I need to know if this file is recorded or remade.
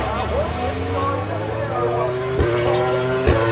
recorded